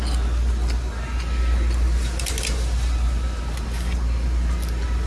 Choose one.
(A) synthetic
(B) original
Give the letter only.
B